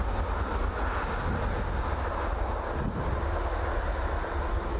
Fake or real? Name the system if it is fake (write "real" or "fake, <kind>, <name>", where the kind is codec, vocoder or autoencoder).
real